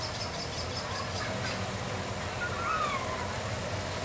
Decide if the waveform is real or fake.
real